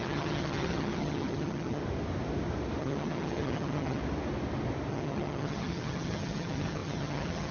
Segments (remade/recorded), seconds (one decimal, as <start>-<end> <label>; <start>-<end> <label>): 0.0-1.8 remade; 1.8-2.8 recorded; 2.8-4.0 remade; 4.0-4.9 recorded; 4.9-7.5 remade